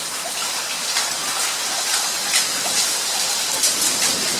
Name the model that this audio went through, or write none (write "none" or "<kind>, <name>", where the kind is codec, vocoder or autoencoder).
none